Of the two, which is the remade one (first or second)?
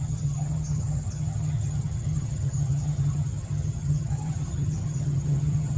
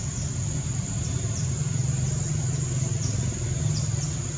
first